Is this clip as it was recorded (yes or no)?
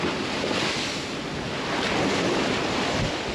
yes